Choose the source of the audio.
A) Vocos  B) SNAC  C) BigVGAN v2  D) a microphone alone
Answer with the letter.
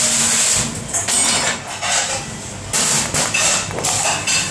D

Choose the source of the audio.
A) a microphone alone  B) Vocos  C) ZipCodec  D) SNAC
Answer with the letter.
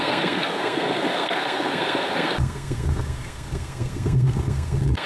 D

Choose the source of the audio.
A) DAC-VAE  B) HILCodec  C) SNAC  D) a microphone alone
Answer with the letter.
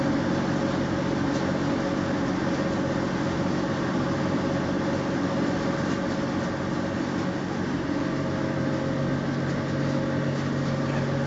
D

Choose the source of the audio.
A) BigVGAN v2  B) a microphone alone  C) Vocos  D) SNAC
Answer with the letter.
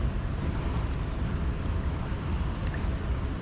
B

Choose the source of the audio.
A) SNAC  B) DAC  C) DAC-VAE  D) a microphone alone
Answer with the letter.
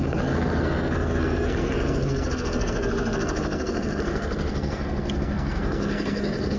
A